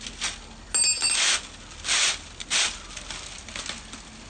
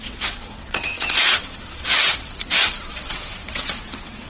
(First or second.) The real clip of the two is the first